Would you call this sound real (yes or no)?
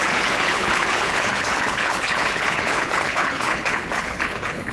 no